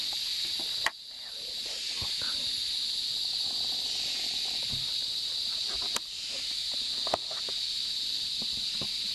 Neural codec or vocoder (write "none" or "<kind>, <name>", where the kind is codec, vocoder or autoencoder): none